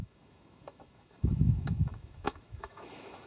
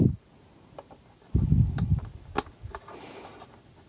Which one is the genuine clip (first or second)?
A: second